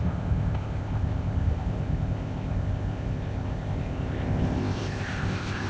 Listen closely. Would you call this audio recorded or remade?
remade